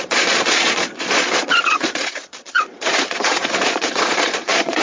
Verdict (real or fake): fake